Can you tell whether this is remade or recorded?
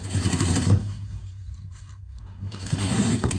remade